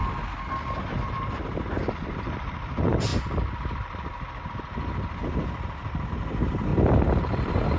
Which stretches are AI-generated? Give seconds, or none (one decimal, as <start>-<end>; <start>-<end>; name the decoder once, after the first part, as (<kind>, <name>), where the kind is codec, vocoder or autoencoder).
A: 0.8-3.1 (vocoder, BigVGAN v2); 6.1-6.7; 7.2-7.8